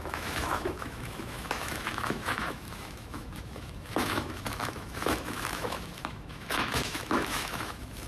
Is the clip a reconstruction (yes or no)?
yes